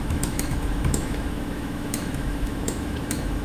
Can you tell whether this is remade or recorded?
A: remade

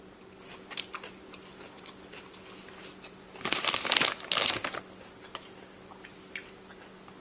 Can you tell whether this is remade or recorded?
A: recorded